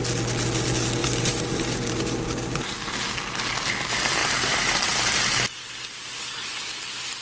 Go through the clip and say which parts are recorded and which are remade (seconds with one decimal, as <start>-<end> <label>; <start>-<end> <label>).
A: 0.0-1.0 recorded; 1.0-2.9 remade; 2.9-4.2 recorded; 4.2-5.1 remade; 5.1-7.2 recorded